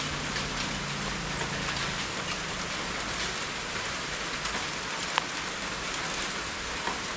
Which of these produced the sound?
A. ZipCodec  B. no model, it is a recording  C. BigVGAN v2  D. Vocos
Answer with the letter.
B